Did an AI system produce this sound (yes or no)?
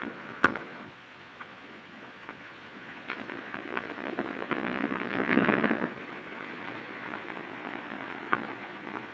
yes